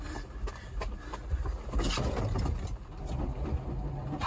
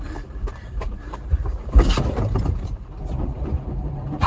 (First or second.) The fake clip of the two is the second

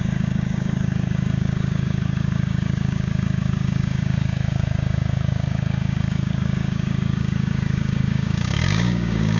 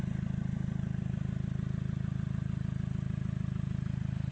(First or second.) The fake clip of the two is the first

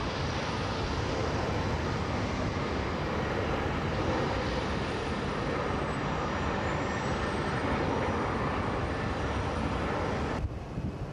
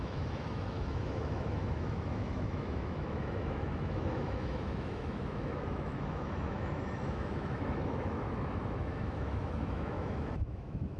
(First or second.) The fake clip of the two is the second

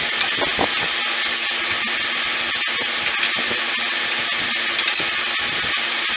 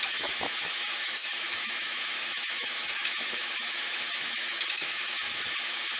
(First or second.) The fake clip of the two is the second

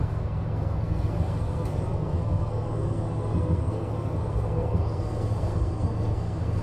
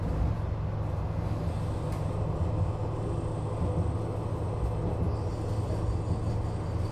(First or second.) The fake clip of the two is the first